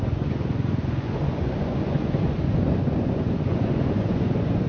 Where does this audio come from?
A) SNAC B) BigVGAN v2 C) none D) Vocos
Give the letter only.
D